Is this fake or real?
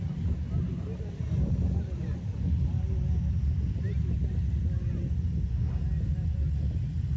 real